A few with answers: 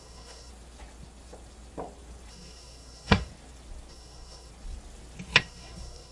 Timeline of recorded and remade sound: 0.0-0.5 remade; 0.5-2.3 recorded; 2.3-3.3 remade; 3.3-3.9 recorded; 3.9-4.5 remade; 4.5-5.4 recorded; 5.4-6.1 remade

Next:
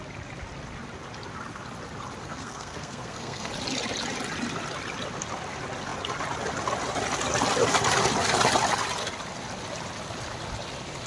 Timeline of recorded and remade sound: 0.0-2.2 recorded; 2.2-3.5 remade; 3.5-11.1 recorded

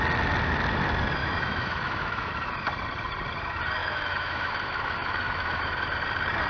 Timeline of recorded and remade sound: 0.0-1.2 recorded; 1.2-2.3 remade; 2.3-3.8 recorded; 3.8-5.6 remade; 5.6-6.5 recorded

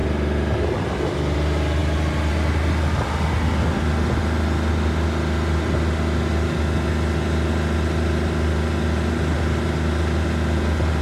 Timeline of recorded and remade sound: 0.0-11.0 recorded

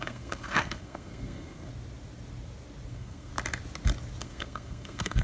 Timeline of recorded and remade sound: 0.0-1.7 remade; 1.7-2.9 recorded; 2.9-3.3 remade; 3.3-4.2 recorded; 4.2-5.2 remade

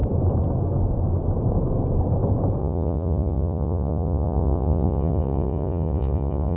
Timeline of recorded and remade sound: 0.0-2.6 recorded; 2.6-6.6 remade

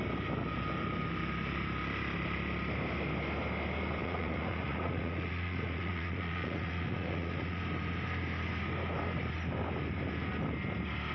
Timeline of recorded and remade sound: 0.0-4.0 recorded; 4.0-7.6 remade; 7.6-11.1 recorded

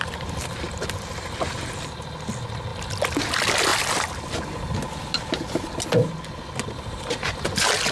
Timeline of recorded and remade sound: 0.0-7.9 recorded